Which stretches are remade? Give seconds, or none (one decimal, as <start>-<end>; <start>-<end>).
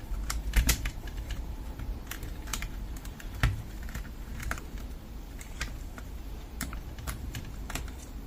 0.0-8.3